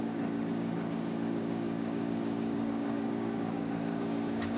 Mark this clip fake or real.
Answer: fake